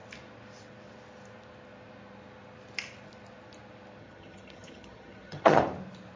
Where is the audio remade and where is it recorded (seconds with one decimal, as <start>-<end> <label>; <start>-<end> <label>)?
0.0-4.0 recorded; 4.0-5.6 remade; 5.6-6.2 recorded